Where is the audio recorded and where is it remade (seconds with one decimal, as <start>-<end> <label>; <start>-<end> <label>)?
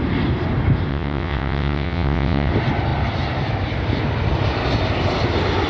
0.0-0.9 recorded; 0.9-2.5 remade; 2.5-5.7 recorded